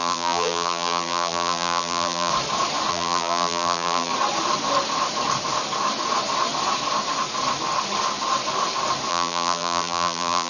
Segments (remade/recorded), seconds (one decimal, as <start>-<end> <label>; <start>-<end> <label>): 0.0-2.3 remade; 2.3-2.9 recorded; 2.9-4.1 remade; 4.1-9.1 recorded; 9.1-10.5 remade